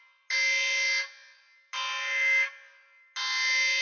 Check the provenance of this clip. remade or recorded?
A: recorded